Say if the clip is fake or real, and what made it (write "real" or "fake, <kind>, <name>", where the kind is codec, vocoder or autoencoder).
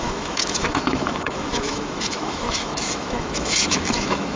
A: fake, autoencoder, DAC-VAE